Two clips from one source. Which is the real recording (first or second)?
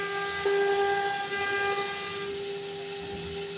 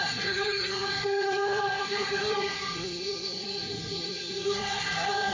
first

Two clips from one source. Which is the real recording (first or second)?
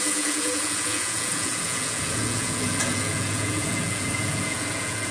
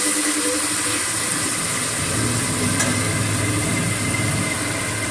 second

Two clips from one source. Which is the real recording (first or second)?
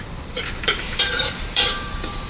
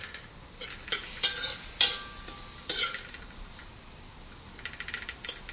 second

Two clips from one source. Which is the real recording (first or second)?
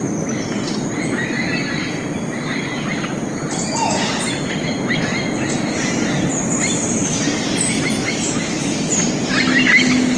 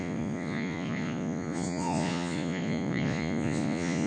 first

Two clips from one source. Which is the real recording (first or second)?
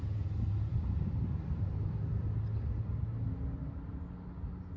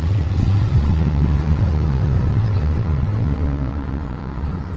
first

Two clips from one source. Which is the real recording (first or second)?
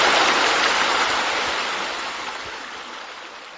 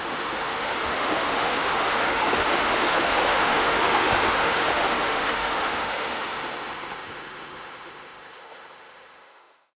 first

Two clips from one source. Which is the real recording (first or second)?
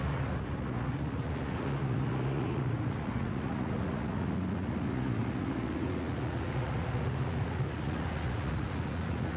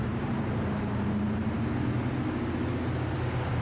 second